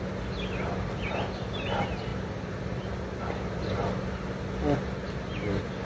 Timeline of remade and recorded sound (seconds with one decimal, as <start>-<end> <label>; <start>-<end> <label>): 0.0-5.8 recorded